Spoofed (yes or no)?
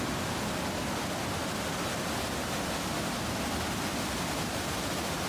no